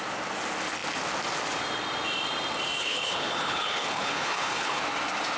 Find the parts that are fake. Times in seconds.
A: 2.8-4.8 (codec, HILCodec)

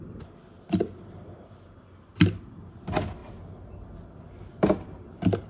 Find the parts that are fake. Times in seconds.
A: none

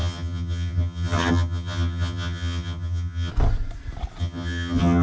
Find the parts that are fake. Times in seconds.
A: 0.0-3.3 (vocoder, HiFi-GAN); 4.2-5.0

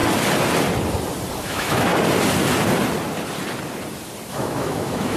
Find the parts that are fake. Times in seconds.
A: 1.4-1.9 (autoencoder, DAC-VAE); 4.3-5.2

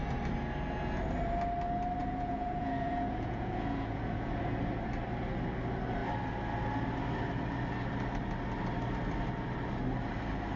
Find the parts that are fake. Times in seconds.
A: 2.0-4.4 (vocoder, Vocos)

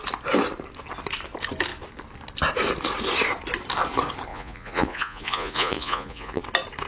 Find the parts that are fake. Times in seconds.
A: 4.3-6.4 (vocoder, Vocos)

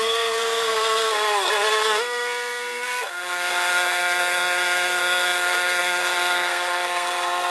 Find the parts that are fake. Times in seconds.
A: 0.0-7.5 (codec, SNAC)

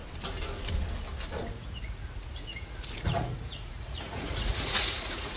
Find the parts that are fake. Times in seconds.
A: 1.5-5.4 (vocoder, Vocos)